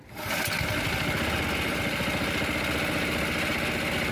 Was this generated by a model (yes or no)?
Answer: no